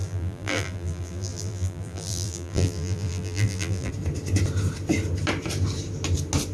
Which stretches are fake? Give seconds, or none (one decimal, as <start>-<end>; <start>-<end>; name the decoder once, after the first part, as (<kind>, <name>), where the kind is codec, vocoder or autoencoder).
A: 0.0-3.9 (vocoder, BigVGAN v2)